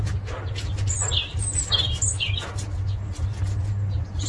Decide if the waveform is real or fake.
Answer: real